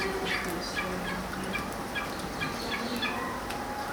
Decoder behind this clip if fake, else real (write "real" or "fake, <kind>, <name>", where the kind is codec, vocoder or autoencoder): real